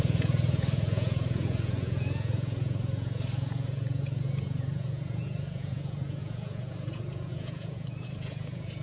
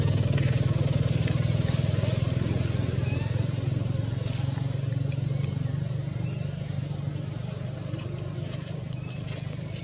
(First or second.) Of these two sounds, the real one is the second